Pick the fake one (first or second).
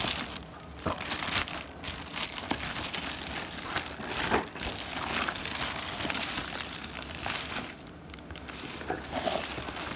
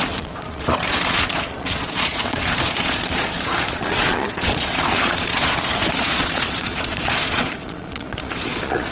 second